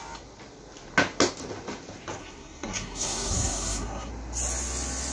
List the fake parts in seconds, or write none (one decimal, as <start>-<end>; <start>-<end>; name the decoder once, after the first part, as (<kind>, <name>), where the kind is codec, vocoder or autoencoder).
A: 2.2-4.1 (codec, SNAC)